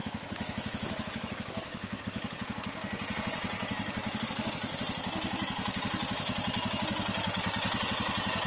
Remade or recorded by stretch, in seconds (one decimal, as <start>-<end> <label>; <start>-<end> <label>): 0.0-2.0 remade; 2.0-8.5 recorded